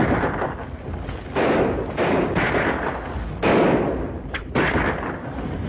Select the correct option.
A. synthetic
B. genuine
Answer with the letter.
B